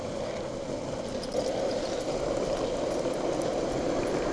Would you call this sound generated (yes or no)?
no